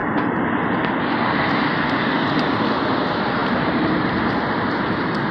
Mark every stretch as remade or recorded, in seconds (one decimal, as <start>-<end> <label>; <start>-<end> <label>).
0.0-3.4 recorded; 3.4-4.8 remade; 4.8-5.3 recorded